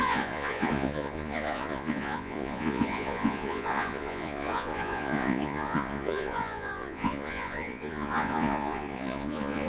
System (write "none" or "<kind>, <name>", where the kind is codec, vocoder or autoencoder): vocoder, Vocos